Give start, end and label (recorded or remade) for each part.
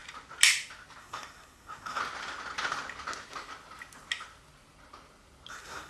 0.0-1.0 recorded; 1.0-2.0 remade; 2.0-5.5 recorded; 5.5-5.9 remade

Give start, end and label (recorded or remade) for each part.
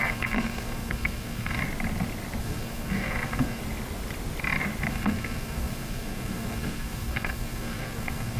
0.0-1.6 remade; 1.6-2.4 recorded; 2.4-3.6 remade; 3.6-4.9 recorded; 4.9-8.4 remade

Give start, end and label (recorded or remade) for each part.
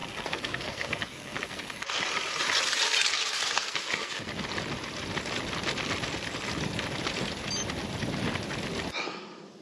0.0-2.0 remade; 2.0-3.1 recorded; 3.1-4.3 remade; 4.3-9.6 recorded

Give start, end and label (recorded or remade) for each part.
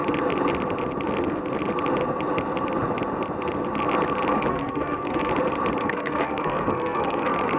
0.0-4.3 recorded; 4.3-5.3 remade; 5.3-5.8 recorded; 5.8-7.6 remade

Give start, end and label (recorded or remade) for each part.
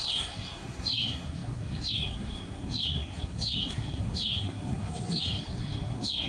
0.0-6.3 remade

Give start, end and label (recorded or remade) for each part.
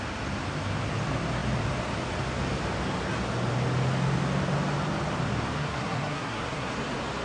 0.0-5.6 recorded; 5.6-6.7 remade; 6.7-7.2 recorded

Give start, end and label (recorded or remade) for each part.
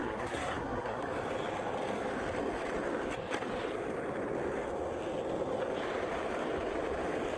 0.0-1.0 remade; 1.0-7.4 recorded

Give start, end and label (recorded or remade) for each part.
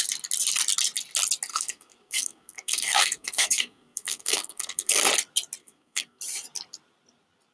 0.0-1.5 recorded; 1.5-5.0 remade; 5.0-5.6 recorded; 5.6-6.2 remade; 6.2-7.5 recorded